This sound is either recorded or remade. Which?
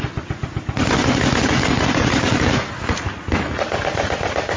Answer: recorded